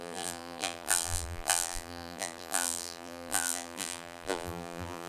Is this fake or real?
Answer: fake